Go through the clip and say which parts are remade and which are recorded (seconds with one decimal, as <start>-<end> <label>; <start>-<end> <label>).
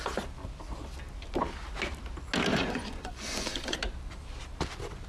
0.0-2.5 recorded; 2.5-3.8 remade; 3.8-5.1 recorded